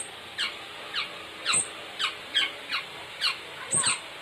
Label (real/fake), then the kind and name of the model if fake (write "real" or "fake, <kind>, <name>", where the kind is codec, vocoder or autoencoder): real